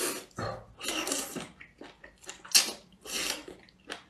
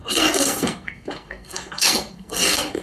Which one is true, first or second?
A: first